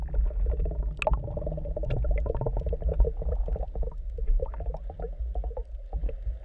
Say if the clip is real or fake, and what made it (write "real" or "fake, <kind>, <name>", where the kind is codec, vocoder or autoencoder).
real